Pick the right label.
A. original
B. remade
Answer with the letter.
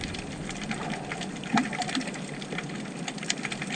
A